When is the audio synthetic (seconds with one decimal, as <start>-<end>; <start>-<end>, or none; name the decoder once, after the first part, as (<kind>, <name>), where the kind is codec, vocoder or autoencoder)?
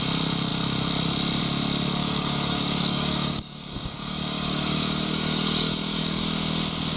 2.0-6.2 (codec, DAC)